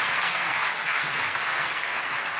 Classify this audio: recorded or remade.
remade